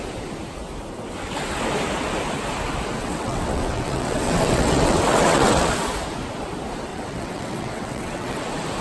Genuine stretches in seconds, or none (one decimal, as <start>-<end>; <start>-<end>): 0.0-3.0; 5.7-6.9; 8.4-8.8